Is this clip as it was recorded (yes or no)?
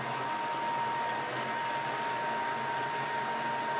yes